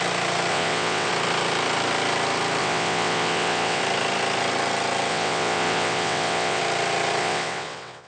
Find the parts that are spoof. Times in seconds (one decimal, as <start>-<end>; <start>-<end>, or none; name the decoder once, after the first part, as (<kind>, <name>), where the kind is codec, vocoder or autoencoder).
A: 0.5-1.1 (vocoder, WaveNeXt); 2.6-3.8; 5.1-6.6; 7.2-8.1